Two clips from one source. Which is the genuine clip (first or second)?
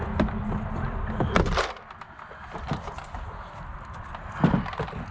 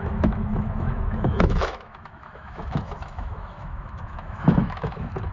first